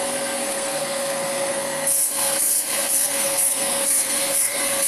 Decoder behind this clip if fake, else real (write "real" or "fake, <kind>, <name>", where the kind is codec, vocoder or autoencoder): fake, codec, SNAC